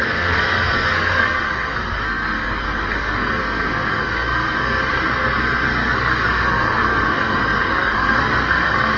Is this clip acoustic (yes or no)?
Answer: no